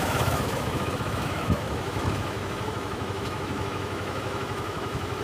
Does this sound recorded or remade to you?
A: remade